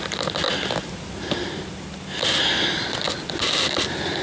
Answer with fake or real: real